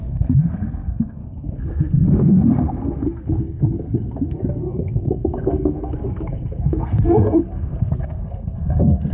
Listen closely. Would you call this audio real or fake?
fake